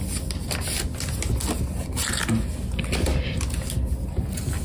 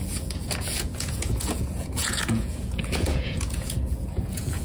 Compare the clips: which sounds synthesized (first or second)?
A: second